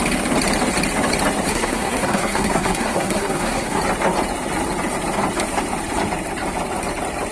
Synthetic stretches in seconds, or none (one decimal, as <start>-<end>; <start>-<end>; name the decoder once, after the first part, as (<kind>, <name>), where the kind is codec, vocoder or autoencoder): 1.5-3.8 (codec, SNAC)